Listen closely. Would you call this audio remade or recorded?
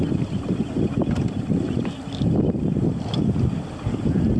recorded